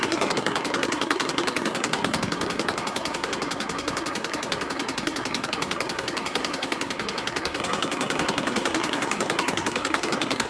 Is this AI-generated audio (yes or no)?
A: yes